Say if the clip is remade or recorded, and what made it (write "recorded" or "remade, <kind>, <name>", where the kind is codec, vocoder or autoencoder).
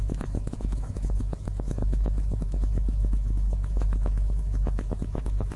remade, autoencoder, DAC-VAE